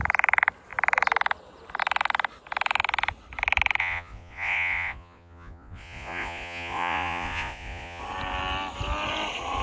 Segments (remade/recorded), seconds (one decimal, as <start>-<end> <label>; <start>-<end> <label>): 0.0-3.8 recorded; 3.8-8.0 remade; 8.0-9.6 recorded